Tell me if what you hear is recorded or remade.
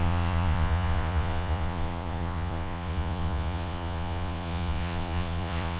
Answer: remade